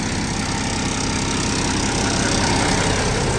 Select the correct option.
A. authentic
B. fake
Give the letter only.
A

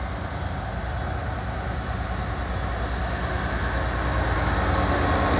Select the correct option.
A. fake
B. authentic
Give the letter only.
B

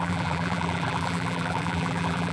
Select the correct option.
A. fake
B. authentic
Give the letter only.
A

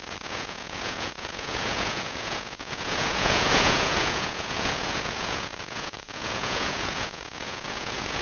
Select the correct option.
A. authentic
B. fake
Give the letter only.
B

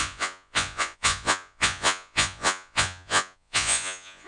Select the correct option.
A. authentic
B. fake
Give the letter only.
B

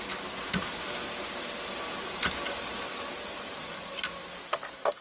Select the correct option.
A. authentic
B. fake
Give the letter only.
A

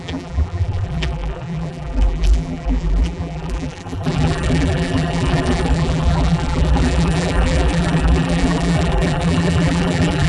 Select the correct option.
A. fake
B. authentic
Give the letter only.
A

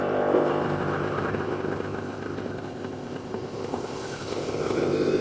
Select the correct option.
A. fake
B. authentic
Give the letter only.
A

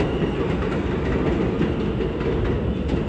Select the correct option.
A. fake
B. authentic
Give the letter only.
B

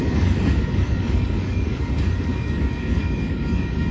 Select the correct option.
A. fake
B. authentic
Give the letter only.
A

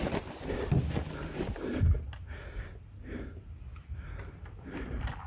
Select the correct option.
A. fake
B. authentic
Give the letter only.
B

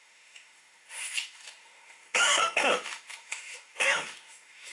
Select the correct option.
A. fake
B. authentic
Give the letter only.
A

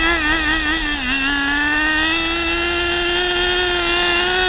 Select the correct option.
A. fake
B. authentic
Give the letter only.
B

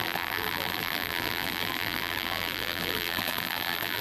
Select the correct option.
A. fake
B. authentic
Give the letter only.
A